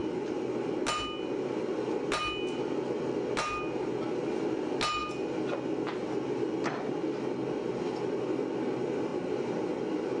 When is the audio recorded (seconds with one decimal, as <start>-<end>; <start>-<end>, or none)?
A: 0.0-9.1